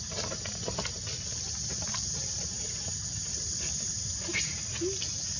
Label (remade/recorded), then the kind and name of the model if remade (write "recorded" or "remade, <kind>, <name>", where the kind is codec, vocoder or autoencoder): recorded